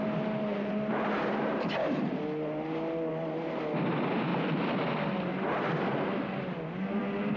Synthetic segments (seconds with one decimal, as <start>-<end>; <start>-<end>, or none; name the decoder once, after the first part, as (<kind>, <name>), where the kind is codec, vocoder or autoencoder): 0.5-2.2 (vocoder, BigVGAN v2)